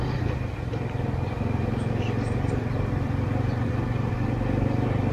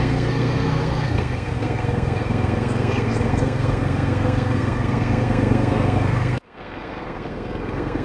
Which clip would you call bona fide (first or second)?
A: first